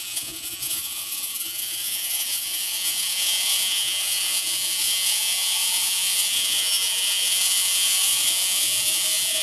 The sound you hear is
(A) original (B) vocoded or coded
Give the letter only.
B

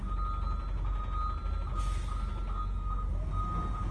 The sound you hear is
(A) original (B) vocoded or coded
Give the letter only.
A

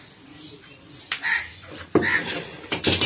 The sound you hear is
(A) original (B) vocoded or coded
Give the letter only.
A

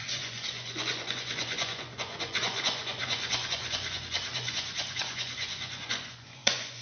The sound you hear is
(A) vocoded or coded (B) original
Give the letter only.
A